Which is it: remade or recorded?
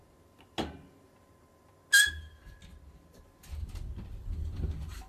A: recorded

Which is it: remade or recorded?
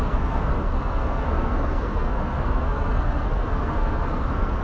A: remade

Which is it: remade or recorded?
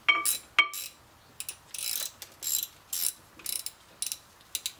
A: recorded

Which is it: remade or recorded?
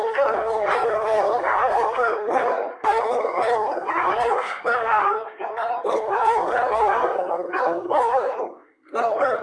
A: remade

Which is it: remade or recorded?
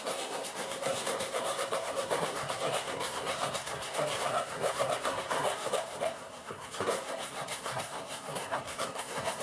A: remade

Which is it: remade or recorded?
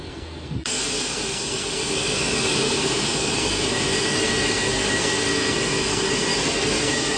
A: remade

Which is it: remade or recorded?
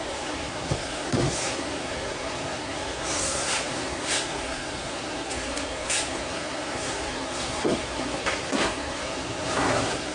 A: remade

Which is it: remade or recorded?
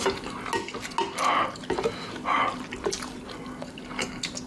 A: recorded